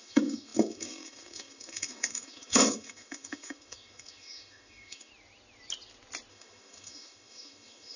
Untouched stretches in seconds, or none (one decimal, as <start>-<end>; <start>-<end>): 5.1-6.3